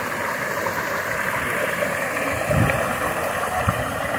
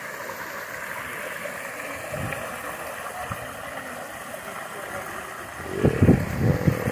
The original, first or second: second